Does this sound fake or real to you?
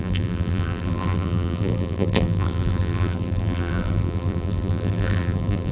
fake